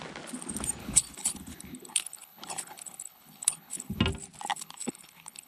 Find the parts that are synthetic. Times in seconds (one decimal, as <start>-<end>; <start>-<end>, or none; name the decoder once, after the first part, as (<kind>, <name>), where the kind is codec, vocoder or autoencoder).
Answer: 0.8-4.0 (codec, HILCodec); 4.5-5.5

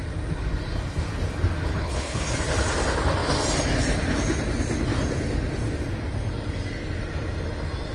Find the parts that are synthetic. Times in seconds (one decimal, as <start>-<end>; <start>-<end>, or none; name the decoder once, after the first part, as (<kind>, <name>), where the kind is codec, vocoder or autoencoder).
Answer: 1.7-2.3 (codec, HILCodec)

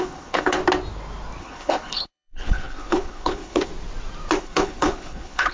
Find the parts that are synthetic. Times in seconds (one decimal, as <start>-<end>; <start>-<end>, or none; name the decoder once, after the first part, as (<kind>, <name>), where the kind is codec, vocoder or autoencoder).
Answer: 0.0-0.6 (codec, HILCodec); 1.4-3.7; 4.4-5.5

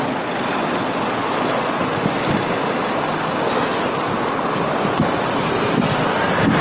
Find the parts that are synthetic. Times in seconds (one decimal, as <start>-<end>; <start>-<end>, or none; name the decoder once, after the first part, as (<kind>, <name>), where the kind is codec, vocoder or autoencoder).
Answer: none

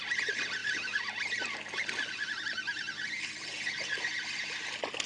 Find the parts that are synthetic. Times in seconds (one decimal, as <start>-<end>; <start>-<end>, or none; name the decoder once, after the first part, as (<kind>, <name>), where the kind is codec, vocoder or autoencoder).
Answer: none